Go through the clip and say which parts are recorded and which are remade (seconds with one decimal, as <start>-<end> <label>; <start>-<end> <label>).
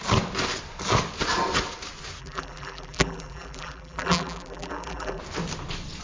0.0-2.2 recorded; 2.2-5.2 remade; 5.2-6.0 recorded